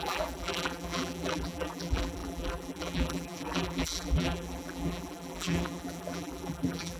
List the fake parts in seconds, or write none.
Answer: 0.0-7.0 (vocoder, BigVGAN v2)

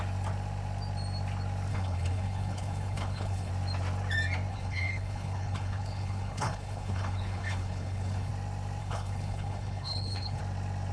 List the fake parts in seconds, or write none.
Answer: 1.7-3.5 (codec, HILCodec); 4.5-8.3; 8.8-10.4

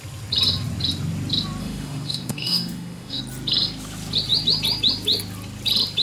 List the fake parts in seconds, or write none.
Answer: 1.6-3.2 (autoencoder, DAC-VAE)

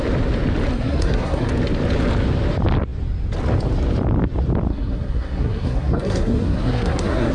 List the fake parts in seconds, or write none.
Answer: 0.7-1.5 (codec, SNAC); 4.7-7.3

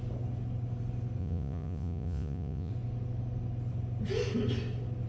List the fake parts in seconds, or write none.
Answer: 1.2-2.7 (vocoder, Vocos)

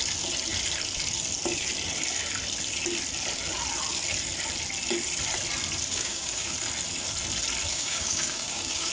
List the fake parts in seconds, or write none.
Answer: 5.9-6.5 (codec, DAC); 7.7-8.9

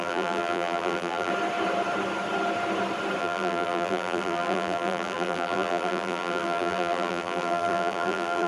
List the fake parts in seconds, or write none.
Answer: 0.0-1.3 (vocoder, BigVGAN v2); 3.2-8.5

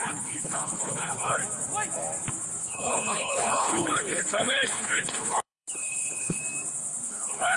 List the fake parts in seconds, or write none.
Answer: 0.0-1.4 (codec, HILCodec); 2.6-6.4; 7.1-7.6